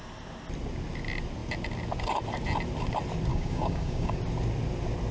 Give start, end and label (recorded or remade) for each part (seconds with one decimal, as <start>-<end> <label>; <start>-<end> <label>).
0.0-3.3 recorded; 3.3-4.2 remade; 4.2-5.1 recorded